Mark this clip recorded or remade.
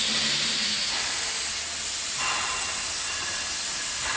recorded